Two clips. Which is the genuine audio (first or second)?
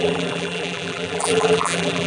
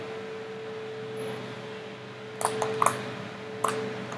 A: second